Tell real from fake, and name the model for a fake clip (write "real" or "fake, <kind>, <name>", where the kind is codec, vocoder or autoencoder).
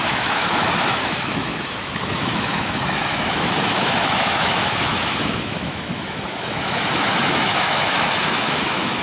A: fake, autoencoder, DAC-VAE